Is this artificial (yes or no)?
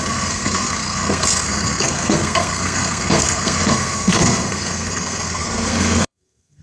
yes